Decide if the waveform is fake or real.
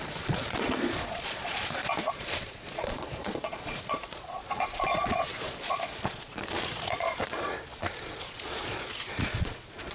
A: fake